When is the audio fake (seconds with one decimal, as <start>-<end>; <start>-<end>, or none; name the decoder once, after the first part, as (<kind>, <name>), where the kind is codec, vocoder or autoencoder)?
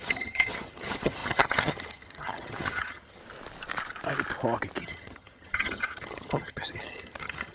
0.0-3.2 (vocoder, HiFi-GAN); 4.8-7.5